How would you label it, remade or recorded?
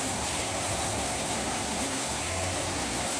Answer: remade